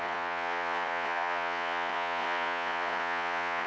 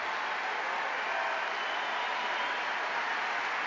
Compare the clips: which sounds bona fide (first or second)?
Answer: second